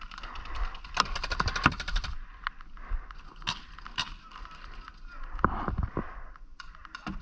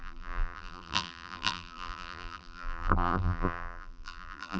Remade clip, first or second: second